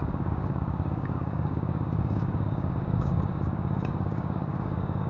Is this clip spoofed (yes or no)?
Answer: yes